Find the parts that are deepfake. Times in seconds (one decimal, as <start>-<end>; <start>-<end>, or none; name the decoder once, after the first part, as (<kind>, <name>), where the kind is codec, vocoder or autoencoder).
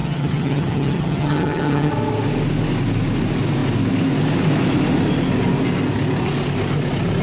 0.0-1.9 (vocoder, HiFi-GAN)